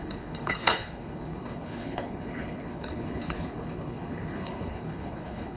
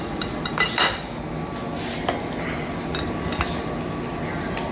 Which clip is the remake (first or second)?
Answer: first